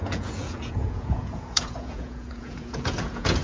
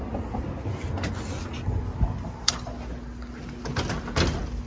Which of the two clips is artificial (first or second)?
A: first